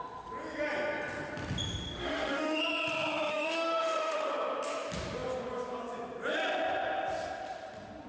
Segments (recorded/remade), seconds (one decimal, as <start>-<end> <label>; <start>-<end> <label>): 0.0-2.0 recorded; 2.0-2.6 remade; 2.6-3.3 recorded; 3.3-4.3 remade; 4.3-8.1 recorded